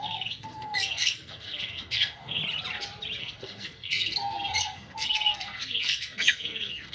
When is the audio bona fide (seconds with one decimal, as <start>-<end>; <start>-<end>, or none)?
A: 2.4-3.2